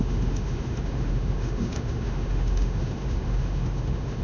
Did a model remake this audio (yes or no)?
yes